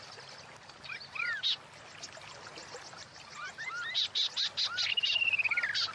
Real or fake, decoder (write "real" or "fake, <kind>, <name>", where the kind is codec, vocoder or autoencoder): real